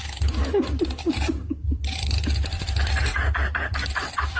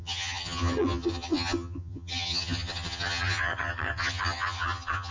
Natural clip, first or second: first